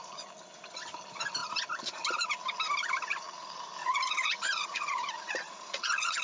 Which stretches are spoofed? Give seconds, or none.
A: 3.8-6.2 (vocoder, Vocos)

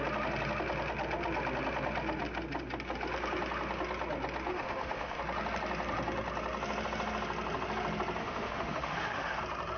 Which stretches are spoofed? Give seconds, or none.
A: 4.5-5.2 (autoencoder, DAC-VAE); 8.2-9.4